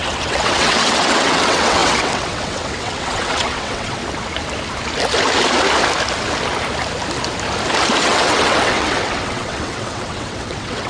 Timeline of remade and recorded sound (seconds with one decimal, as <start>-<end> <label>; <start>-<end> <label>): 0.0-4.0 remade; 4.0-8.0 recorded; 8.0-10.9 remade